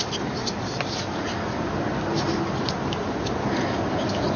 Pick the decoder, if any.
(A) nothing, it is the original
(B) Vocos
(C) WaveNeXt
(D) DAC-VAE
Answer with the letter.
A